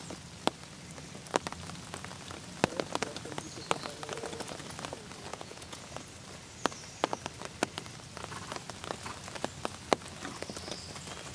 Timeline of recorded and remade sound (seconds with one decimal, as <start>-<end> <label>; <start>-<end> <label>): 0.0-5.3 recorded; 5.3-5.9 remade; 5.9-11.3 recorded